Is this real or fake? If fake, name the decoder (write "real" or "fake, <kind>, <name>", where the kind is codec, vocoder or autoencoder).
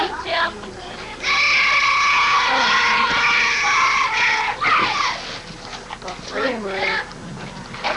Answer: real